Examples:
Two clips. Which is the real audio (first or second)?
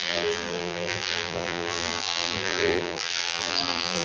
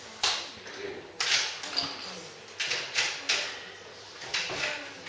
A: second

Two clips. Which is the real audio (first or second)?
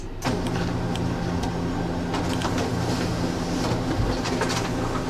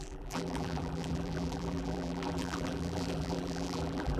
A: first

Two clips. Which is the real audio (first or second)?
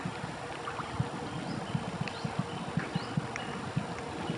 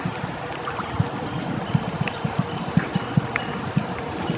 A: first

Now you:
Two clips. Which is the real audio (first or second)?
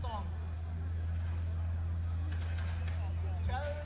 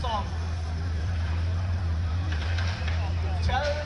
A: first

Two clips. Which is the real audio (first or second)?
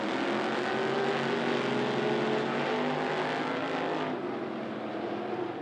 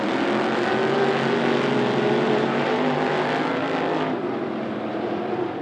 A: first